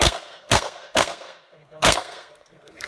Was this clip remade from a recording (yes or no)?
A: yes